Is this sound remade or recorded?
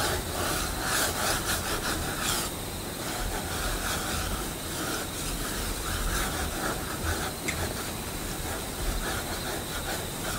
recorded